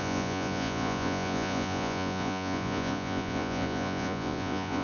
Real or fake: fake